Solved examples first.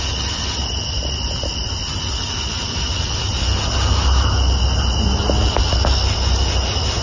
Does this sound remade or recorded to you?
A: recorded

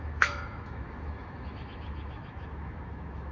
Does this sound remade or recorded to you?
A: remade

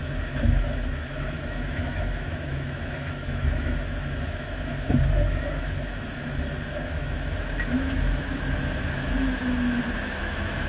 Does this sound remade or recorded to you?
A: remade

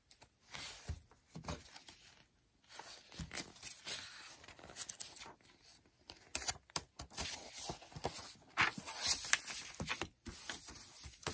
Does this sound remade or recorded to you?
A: recorded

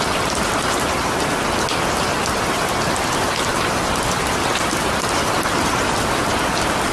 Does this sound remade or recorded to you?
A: recorded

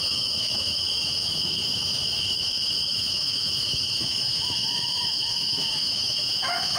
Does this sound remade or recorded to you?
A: remade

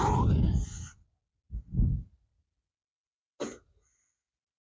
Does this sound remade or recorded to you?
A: recorded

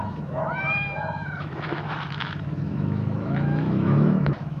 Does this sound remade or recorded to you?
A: remade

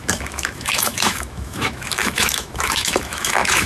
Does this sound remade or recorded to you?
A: remade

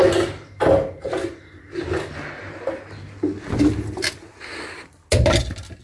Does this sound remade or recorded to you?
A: recorded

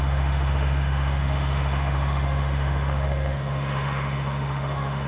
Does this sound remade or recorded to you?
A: remade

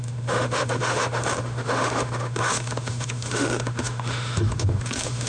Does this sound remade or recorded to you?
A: remade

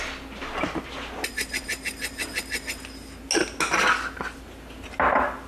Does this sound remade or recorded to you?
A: recorded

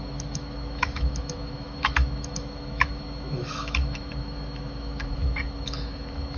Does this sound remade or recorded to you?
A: remade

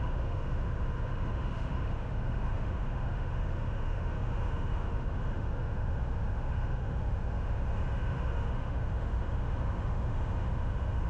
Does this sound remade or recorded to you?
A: remade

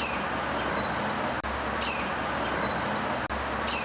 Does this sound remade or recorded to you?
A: recorded